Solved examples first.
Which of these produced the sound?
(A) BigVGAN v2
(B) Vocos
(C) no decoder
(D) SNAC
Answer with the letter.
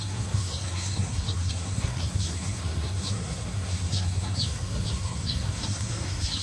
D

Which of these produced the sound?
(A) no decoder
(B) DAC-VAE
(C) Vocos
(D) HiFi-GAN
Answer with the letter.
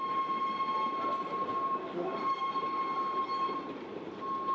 A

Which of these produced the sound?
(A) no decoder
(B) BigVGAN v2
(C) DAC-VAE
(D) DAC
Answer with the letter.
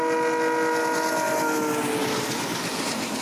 A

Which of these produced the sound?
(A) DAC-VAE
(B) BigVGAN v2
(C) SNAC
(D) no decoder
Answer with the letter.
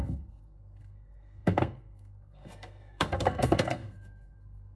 C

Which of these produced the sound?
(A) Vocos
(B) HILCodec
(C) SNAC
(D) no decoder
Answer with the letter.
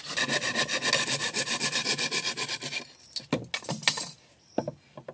D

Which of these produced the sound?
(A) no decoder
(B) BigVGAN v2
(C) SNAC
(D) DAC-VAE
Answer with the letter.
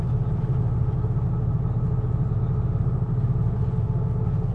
A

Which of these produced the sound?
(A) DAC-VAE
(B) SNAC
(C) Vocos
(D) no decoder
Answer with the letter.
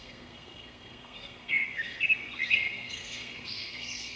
B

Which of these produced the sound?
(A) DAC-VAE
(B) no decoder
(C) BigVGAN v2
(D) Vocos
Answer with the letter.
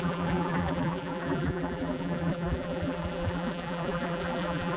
C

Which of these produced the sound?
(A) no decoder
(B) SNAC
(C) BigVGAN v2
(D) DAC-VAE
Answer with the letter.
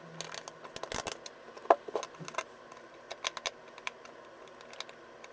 A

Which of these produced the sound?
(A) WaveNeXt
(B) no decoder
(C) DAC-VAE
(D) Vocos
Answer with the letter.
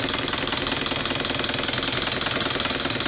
B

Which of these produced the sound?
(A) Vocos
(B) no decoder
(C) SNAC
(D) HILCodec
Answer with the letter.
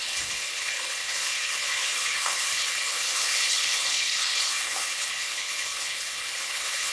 D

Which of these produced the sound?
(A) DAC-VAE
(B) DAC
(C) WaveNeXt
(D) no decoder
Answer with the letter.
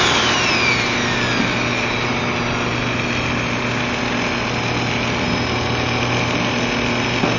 D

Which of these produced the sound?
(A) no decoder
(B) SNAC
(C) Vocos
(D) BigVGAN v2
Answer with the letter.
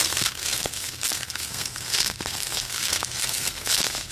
B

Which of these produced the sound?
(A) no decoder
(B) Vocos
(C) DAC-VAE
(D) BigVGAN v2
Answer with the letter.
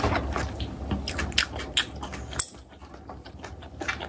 A